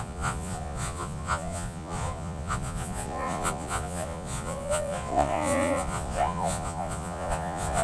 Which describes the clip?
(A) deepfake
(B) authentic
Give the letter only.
A